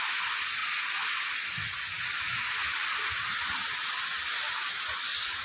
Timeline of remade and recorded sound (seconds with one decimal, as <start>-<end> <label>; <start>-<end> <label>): 0.0-5.4 recorded